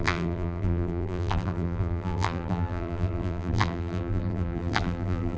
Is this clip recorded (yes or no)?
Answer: no